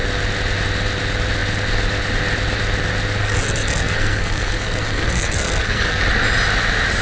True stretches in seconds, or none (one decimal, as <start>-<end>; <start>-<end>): 0.0-3.2; 6.0-7.0